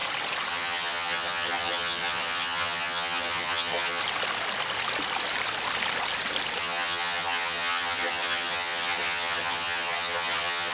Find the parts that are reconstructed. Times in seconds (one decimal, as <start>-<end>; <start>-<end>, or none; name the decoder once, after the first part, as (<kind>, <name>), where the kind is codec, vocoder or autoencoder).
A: 0.5-4.0 (vocoder, HiFi-GAN); 6.6-10.7

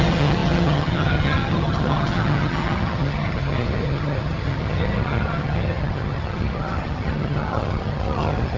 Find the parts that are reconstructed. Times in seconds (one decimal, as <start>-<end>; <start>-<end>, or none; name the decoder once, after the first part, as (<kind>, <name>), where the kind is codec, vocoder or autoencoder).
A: 0.0-8.6 (vocoder, HiFi-GAN)